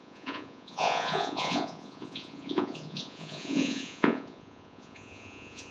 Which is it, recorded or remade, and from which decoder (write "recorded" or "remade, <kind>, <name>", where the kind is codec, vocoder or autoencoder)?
remade, vocoder, Vocos